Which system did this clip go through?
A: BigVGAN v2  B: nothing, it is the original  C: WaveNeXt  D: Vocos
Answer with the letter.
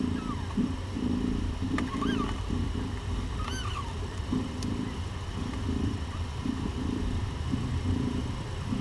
A